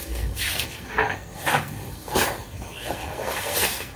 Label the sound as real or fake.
fake